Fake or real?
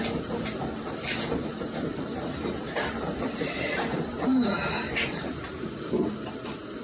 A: fake